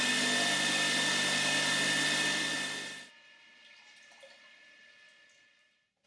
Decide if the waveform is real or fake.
real